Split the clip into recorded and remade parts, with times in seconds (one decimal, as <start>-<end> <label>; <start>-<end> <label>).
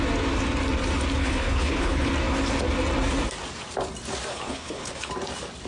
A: 0.0-1.2 recorded; 1.2-2.1 remade; 2.1-4.3 recorded; 4.3-5.1 remade; 5.1-5.7 recorded